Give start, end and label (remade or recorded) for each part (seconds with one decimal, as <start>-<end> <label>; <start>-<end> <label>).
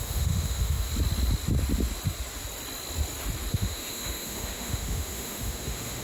0.0-0.9 remade; 0.9-3.5 recorded; 3.5-6.0 remade